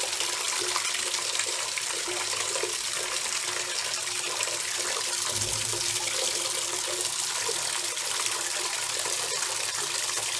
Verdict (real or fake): real